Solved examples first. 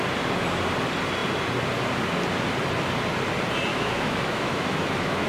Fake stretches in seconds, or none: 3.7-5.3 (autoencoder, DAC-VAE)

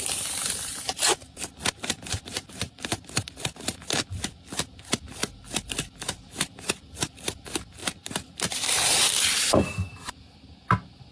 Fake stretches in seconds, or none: none

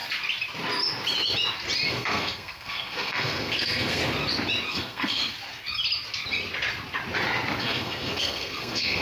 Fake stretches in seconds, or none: 1.9-4.0 (codec, SNAC); 4.7-5.2; 7.6-9.0

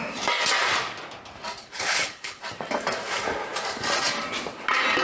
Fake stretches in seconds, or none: 1.6-2.4 (codec, HILCodec)

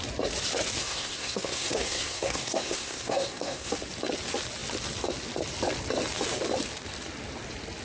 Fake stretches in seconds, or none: 0.8-3.7 (codec, SNAC)

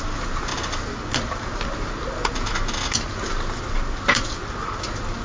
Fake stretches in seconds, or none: none

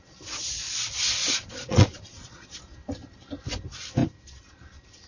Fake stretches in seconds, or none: 1.2-2.6 (vocoder, Vocos)

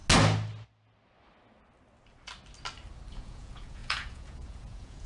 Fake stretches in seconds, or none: 3.1-5.1 (vocoder, Vocos)